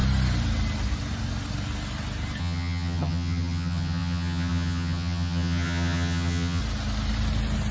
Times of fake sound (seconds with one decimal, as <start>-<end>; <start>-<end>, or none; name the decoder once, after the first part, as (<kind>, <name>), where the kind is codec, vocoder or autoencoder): 2.4-6.6 (vocoder, HiFi-GAN)